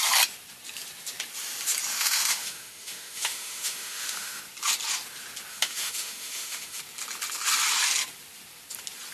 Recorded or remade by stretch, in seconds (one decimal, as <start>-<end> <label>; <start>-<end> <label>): 0.0-1.9 recorded; 1.9-4.4 remade; 4.4-5.5 recorded; 5.5-6.8 remade; 6.8-9.1 recorded